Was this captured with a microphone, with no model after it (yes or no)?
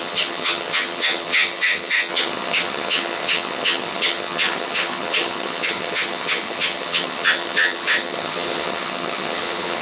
no